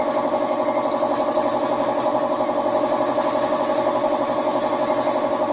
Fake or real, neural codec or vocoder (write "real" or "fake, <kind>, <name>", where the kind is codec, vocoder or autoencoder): real